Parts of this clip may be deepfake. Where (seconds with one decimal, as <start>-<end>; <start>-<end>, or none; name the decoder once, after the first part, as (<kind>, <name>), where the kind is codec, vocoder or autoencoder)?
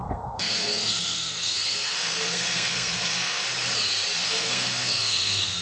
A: 0.0-3.4 (codec, SNAC); 4.2-5.6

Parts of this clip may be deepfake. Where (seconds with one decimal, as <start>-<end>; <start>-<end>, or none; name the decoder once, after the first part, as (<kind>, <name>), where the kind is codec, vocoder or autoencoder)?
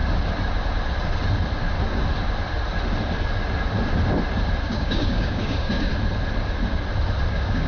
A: 4.6-5.9 (codec, DAC); 7.3-7.7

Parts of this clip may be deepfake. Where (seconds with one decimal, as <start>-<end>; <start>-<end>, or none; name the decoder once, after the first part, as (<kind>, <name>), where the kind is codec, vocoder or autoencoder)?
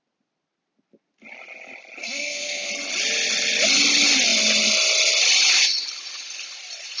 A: 2.0-2.7 (codec, SNAC)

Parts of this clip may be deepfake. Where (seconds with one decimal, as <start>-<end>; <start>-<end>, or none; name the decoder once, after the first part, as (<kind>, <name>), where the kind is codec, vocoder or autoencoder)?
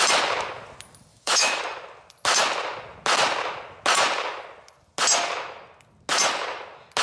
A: 1.1-1.6 (autoencoder, DAC-VAE)